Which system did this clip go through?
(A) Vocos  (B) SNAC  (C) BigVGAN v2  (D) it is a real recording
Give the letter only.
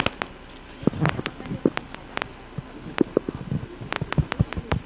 D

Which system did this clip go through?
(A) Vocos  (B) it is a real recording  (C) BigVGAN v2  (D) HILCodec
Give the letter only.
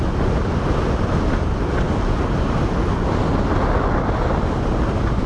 B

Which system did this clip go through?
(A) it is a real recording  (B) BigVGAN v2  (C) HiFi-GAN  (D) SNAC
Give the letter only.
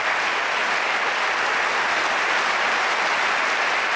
A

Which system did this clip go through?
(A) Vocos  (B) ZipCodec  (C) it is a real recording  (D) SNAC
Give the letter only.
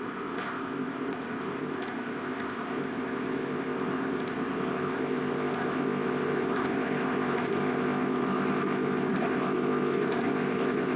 B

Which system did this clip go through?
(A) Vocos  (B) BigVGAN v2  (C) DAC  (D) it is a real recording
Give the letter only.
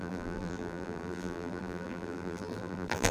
B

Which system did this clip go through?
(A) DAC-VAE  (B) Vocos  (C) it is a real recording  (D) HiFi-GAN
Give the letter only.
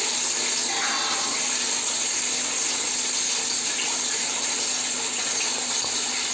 C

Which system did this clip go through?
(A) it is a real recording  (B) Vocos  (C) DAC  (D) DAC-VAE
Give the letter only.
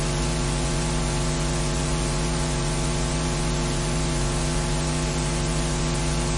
B